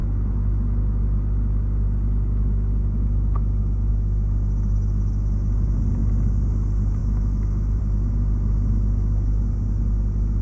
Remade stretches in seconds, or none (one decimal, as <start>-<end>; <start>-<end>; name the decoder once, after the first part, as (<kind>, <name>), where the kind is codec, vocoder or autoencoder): 7.0-7.8 (autoencoder, DAC-VAE)